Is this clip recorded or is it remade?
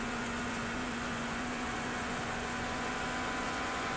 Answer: remade